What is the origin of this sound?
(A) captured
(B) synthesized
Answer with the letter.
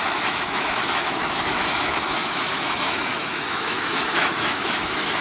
B